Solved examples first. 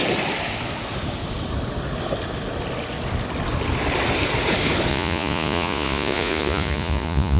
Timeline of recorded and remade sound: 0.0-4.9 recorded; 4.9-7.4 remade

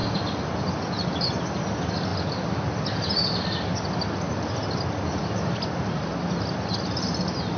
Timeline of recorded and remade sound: 0.0-7.6 recorded